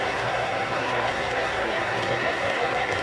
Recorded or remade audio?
remade